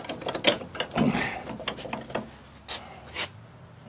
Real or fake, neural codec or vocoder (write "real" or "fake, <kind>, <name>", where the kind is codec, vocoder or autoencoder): real